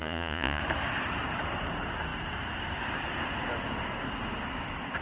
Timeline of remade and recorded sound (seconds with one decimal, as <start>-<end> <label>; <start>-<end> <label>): 0.0-0.6 remade; 0.6-5.0 recorded